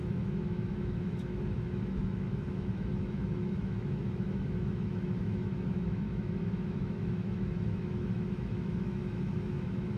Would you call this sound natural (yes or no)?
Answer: no